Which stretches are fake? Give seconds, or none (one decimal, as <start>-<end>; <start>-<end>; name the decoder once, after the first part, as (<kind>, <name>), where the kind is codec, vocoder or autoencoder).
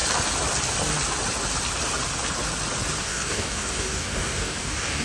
3.0-5.0 (codec, DAC)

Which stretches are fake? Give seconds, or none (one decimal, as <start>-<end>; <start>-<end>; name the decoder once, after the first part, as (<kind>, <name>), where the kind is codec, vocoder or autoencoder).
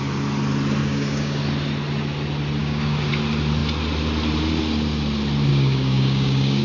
0.8-1.4 (codec, DAC); 2.6-3.1; 5.5-6.6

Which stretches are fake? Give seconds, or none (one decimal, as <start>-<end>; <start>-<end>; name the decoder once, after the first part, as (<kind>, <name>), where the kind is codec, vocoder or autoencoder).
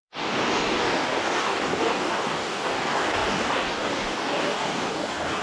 0.0-5.4 (codec, DAC)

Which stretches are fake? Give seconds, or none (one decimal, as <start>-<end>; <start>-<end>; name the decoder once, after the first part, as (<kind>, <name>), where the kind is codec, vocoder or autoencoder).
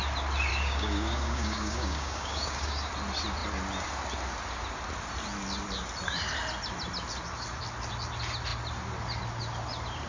0.5-2.9 (codec, DAC)